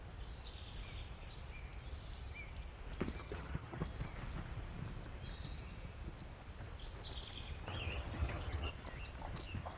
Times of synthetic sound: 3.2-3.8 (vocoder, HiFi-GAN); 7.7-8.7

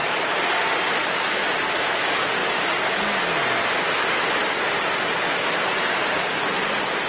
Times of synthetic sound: none

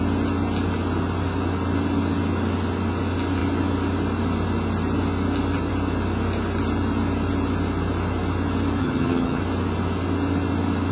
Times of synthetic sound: 8.8-9.4 (vocoder, HiFi-GAN)

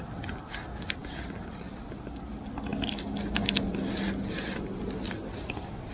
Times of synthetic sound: none

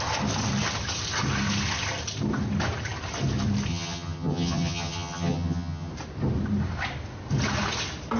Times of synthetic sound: 3.7-5.9 (vocoder, HiFi-GAN)